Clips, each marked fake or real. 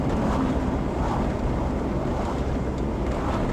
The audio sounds real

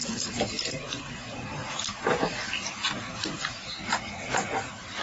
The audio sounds real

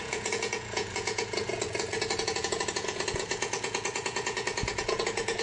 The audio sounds fake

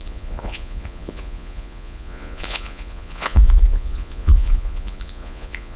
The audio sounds fake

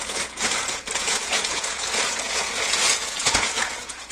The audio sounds fake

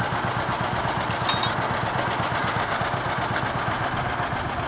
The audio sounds real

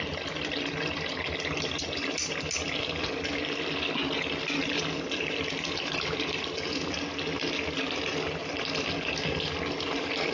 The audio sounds real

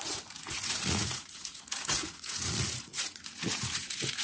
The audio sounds fake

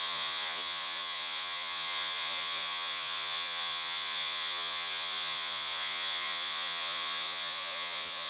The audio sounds fake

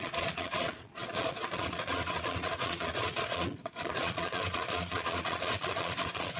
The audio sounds fake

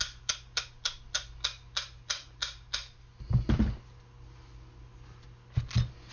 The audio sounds real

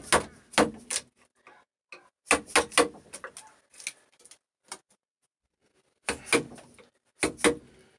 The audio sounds real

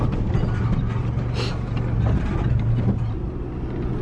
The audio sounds real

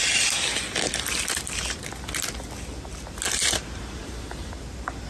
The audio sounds real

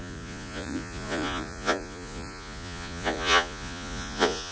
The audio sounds fake